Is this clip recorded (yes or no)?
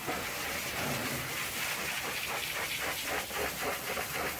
yes